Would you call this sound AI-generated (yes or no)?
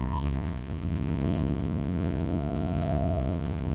yes